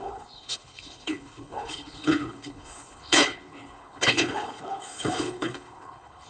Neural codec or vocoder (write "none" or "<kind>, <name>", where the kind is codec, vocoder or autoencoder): codec, HILCodec